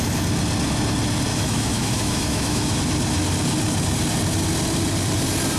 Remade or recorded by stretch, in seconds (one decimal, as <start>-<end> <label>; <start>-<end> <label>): 0.0-1.3 recorded; 1.3-2.8 remade; 2.8-5.6 recorded